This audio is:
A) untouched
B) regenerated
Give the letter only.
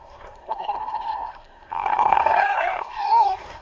B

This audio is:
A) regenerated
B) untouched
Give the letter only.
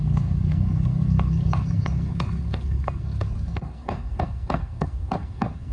A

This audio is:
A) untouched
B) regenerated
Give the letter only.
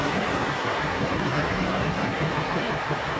B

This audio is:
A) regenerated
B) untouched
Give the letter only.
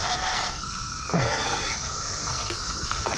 A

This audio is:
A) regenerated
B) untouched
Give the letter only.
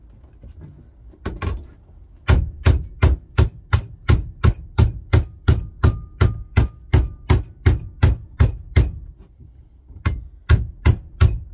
B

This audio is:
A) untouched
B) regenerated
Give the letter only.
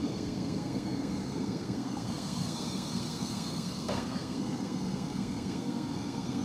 B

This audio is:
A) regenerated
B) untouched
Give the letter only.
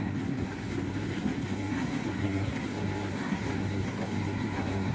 A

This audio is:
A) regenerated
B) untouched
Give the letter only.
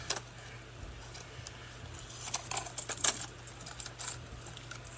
B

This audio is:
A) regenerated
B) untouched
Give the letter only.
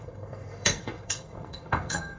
A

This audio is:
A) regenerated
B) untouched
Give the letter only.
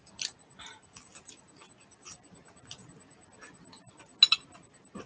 B